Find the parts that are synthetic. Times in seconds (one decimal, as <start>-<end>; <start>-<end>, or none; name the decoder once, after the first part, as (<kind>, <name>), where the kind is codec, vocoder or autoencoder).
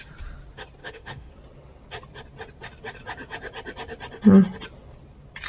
0.8-1.3 (autoencoder, DAC-VAE)